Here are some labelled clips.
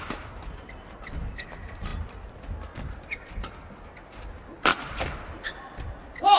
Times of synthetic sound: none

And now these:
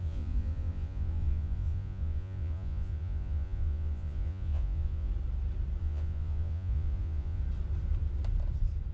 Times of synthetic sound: 0.0-5.1 (vocoder, Vocos); 5.8-7.4

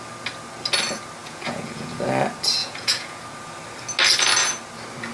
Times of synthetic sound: 1.2-2.0 (vocoder, Vocos); 2.6-3.2

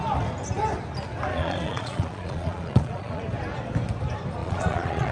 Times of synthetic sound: 1.3-3.2 (vocoder, Vocos); 4.4-5.1

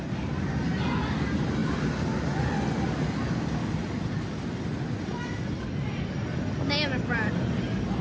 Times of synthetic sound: none

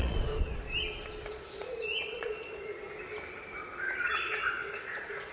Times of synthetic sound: 0.0-0.6 (vocoder, Vocos); 1.3-2.8; 4.0-5.3

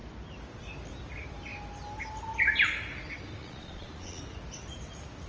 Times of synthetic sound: 3.4-4.2 (vocoder, Vocos)